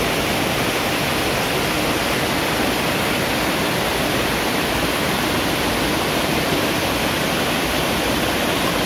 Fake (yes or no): no